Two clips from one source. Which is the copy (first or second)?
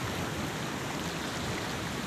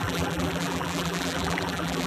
second